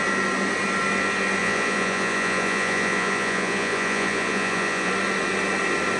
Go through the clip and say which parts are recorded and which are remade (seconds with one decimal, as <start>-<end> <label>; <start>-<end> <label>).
0.0-1.4 recorded; 1.4-4.9 remade; 4.9-6.0 recorded